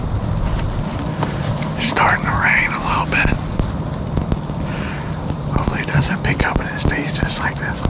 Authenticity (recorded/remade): recorded